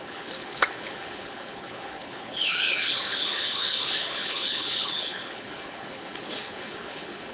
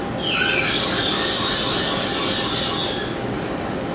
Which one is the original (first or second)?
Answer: second